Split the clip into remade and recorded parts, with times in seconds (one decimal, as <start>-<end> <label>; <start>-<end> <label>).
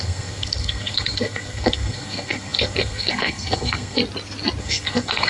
0.0-4.0 remade; 4.0-4.6 recorded; 4.6-5.3 remade